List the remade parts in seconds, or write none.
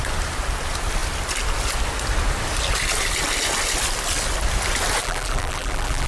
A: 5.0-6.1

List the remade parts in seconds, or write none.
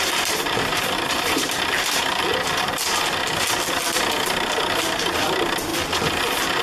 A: 0.0-2.3; 4.7-5.7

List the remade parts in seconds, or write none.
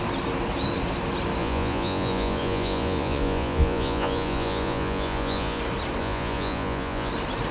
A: 1.4-5.6; 6.0-7.1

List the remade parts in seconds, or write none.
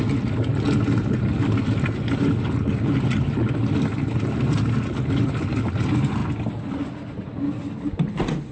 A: none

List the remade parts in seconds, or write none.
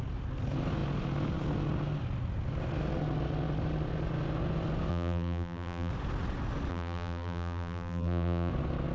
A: 4.9-5.9; 6.7-8.5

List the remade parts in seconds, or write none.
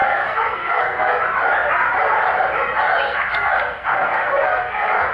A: 0.0-1.2; 3.1-5.1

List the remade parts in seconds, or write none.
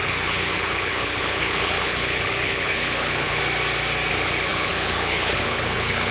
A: 0.0-3.4; 4.1-6.1